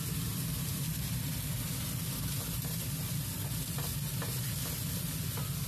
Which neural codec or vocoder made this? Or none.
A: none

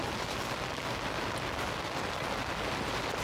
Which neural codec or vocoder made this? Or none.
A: none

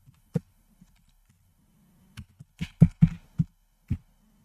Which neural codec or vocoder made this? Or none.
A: none